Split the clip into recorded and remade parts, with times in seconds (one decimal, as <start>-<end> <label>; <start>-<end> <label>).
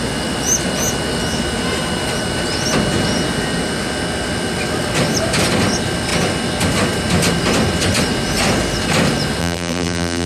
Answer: 0.0-9.4 recorded; 9.4-10.3 remade